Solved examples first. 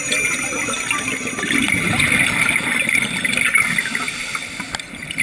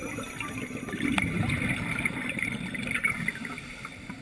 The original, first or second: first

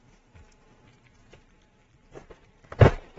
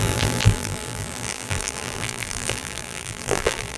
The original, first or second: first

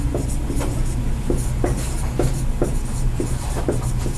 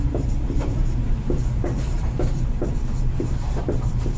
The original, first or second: first